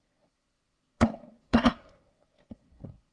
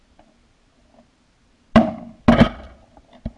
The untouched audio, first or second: second